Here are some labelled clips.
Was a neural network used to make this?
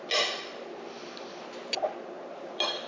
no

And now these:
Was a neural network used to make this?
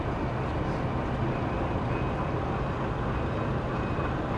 no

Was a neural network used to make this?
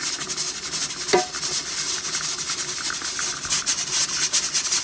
no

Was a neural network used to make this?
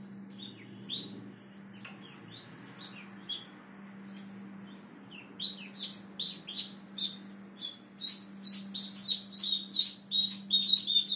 no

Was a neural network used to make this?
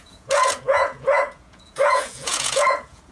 yes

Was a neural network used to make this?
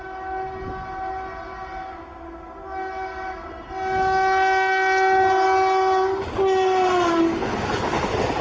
no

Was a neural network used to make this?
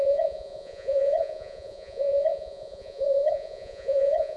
yes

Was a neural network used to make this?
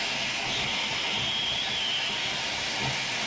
no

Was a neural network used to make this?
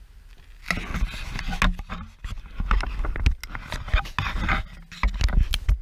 no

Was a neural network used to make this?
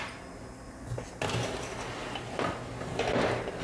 no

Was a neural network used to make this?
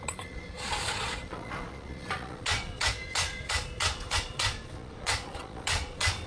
yes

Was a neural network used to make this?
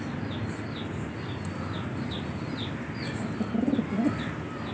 no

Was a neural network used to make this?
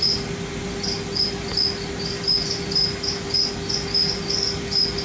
no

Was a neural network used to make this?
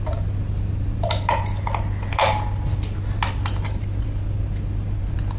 no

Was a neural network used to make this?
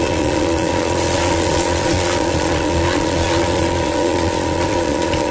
yes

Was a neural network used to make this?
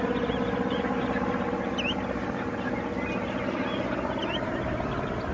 no